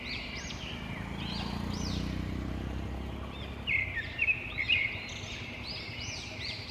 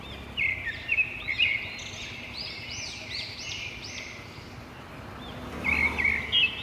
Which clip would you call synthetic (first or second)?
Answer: first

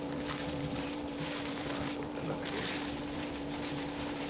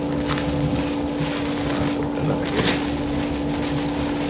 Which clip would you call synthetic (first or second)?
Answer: first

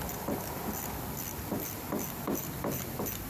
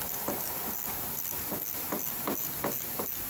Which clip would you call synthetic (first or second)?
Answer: first